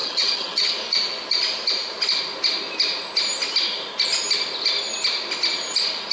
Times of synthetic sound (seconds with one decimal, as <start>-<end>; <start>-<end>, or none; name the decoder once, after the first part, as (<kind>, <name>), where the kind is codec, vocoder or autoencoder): 0.0-0.7 (vocoder, HiFi-GAN)